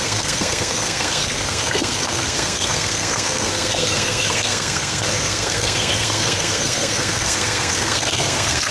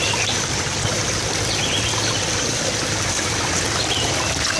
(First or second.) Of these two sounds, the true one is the second